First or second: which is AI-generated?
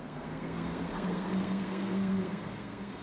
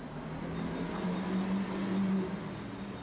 first